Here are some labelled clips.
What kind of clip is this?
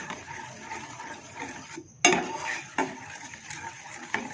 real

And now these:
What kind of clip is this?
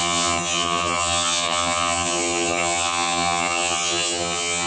fake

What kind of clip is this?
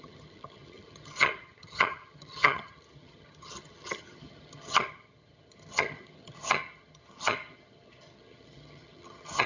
fake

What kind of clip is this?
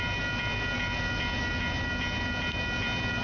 real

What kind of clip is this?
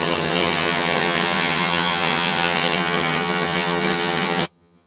fake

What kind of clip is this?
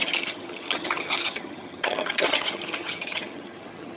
fake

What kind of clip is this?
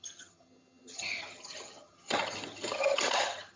fake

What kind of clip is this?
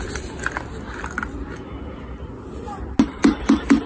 real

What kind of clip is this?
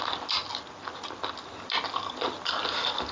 real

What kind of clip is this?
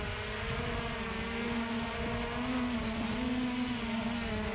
real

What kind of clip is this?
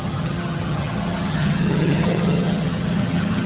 fake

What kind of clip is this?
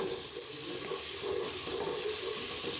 real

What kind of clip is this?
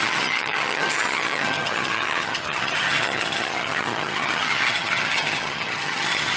fake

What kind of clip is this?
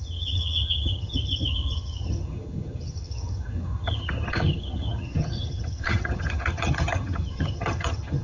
fake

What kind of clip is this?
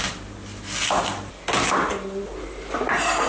real